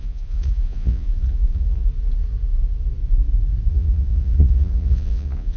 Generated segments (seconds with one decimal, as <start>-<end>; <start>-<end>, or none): 0.0-1.8; 3.7-5.6